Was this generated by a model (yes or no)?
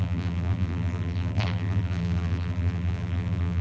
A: yes